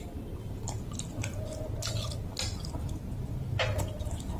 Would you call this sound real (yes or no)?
yes